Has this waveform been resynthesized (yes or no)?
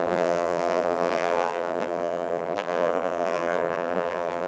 yes